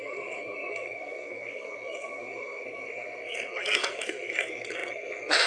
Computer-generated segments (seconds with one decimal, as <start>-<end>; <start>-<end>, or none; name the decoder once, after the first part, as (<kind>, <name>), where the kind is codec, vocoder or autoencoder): 0.0-5.5 (codec, SNAC)

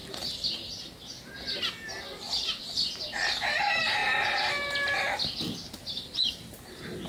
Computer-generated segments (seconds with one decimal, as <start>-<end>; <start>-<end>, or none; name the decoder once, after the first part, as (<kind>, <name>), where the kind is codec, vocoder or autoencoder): none

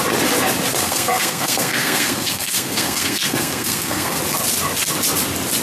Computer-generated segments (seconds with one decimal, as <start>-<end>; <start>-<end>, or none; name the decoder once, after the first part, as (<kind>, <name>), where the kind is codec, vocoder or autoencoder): 0.8-4.2 (codec, SNAC)

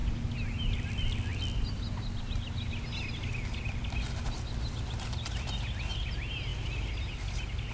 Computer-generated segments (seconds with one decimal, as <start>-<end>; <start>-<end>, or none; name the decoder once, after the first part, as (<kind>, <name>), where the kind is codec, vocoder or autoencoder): none

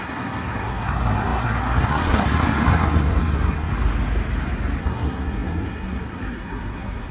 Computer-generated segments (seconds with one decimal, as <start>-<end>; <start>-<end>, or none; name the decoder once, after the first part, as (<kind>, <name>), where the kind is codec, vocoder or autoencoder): 0.0-3.7 (codec, SNAC); 4.8-7.1

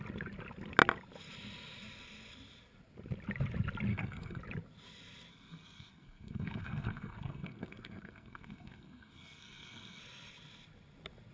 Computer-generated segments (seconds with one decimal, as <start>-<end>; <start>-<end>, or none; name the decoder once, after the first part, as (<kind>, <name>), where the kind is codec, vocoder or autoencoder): 3.9-4.4 (codec, SNAC); 5.3-10.0